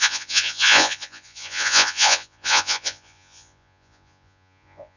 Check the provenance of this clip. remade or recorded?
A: remade